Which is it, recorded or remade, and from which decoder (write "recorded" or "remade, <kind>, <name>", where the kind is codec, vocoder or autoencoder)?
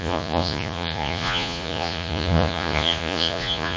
remade, vocoder, Vocos